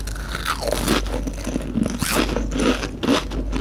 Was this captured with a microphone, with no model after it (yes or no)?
yes